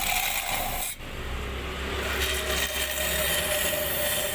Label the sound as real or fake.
real